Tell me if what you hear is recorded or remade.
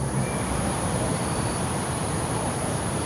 remade